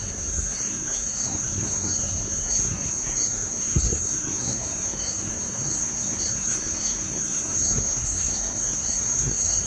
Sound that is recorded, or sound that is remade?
remade